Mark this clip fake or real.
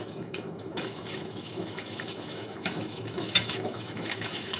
fake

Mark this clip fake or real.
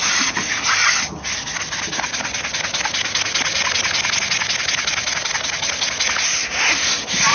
real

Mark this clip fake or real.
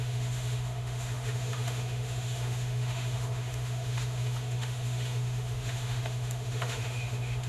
fake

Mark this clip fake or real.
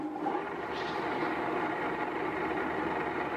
real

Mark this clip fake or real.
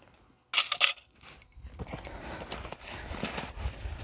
real